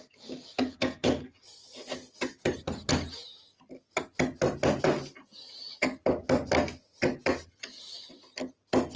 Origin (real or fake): real